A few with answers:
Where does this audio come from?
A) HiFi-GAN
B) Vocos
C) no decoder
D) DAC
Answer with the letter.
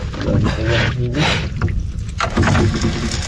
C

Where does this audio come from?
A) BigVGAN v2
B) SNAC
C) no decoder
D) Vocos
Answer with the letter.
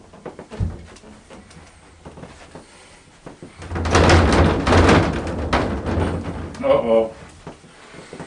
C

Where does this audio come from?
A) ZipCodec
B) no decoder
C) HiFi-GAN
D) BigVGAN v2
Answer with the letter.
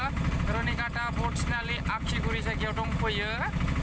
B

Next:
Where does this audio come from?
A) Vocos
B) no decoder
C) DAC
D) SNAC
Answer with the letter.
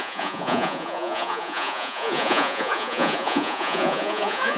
A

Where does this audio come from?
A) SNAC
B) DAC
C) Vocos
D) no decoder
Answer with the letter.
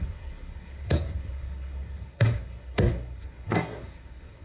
A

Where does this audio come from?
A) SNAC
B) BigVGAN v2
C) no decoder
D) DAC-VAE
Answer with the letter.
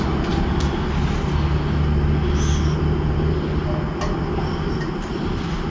C